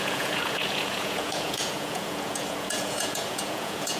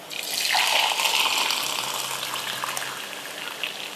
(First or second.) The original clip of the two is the second